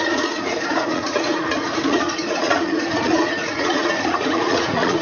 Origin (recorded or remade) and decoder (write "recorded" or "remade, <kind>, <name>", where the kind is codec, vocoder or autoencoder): remade, vocoder, Vocos